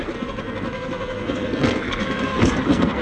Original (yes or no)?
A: no